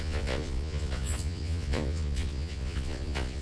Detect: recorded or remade remade